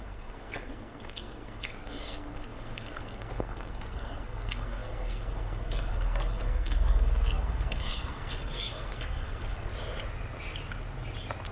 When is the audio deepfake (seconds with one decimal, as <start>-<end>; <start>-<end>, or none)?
0.0-9.7